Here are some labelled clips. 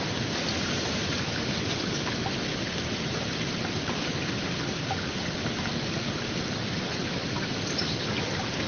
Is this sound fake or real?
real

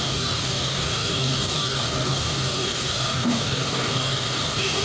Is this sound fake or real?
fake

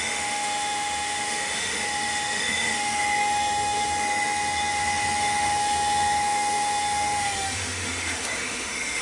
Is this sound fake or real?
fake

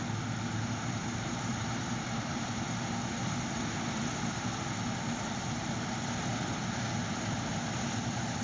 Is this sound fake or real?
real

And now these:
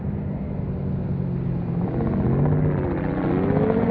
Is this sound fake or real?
real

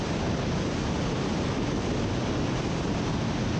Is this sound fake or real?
real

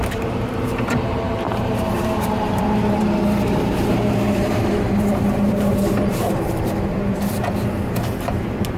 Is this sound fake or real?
fake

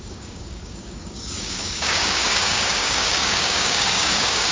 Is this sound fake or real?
fake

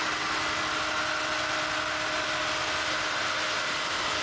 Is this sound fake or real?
real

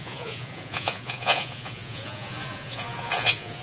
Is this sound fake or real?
fake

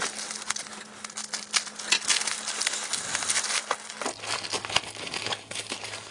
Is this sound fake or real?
real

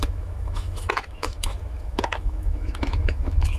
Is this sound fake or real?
fake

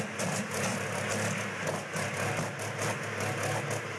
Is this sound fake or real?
real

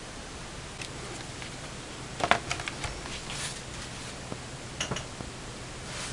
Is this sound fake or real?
real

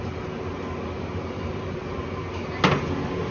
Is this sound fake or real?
real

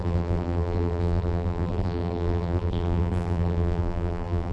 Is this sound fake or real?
fake